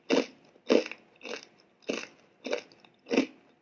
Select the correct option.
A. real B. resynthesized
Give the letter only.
A